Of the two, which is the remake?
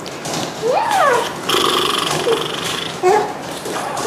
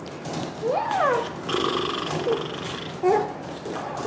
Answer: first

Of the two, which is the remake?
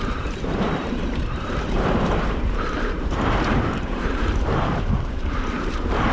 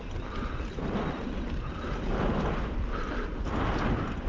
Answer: first